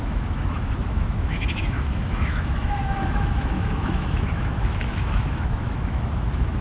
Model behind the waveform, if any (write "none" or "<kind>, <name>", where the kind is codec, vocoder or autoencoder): autoencoder, DAC-VAE